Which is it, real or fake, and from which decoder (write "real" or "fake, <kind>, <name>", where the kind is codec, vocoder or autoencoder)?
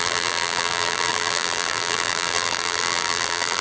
fake, vocoder, BigVGAN v2